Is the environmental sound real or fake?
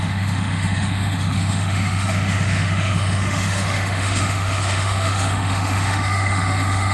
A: fake